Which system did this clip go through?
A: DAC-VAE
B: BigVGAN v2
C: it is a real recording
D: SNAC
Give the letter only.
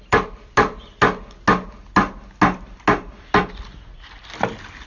C